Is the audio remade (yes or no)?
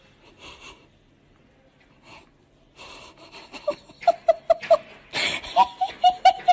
no